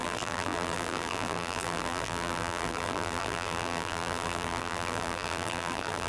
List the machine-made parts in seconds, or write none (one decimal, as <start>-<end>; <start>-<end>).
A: 0.0-6.1